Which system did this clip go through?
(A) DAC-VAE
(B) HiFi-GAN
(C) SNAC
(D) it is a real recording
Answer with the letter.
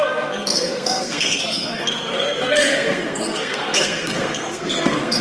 C